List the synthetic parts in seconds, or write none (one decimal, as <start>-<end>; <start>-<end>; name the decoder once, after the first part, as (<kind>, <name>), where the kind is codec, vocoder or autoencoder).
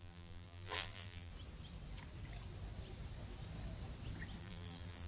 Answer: 0.0-1.3 (vocoder, BigVGAN v2); 4.4-5.1